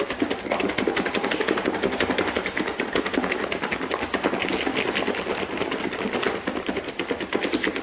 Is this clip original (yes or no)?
yes